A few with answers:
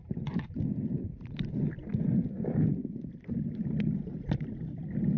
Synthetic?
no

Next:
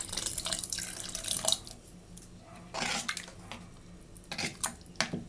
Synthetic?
no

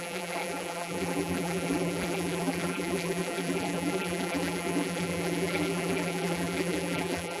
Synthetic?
yes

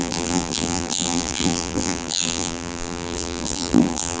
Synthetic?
yes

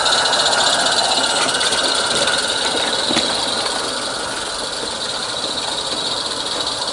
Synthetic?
no